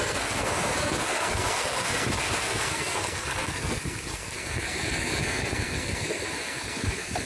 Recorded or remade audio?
remade